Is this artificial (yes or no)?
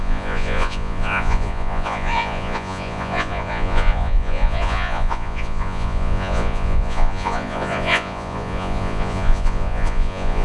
yes